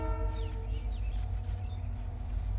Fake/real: real